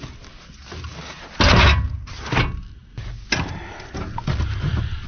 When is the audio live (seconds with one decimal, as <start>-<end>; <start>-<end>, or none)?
0.0-5.1